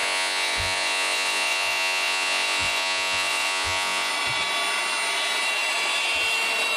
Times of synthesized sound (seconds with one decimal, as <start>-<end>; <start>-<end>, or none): 0.0-4.1

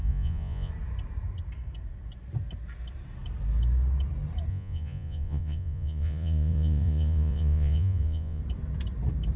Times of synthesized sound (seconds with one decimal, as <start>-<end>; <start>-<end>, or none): 0.0-0.7; 4.5-8.4

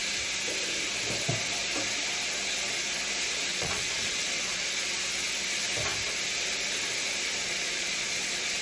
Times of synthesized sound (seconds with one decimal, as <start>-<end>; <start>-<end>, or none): 3.5-4.7; 7.4-8.6

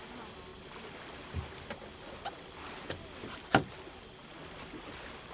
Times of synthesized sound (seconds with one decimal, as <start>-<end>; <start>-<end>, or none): none

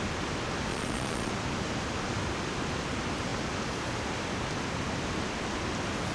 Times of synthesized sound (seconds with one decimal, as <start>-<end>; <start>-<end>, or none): 0.7-1.3